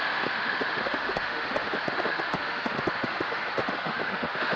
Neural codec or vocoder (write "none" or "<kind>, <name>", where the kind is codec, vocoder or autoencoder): autoencoder, DAC-VAE